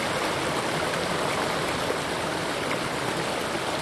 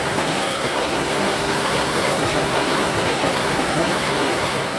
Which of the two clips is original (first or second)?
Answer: first